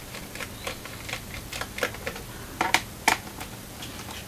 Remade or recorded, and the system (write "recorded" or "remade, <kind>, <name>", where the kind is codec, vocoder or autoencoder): remade, vocoder, BigVGAN v2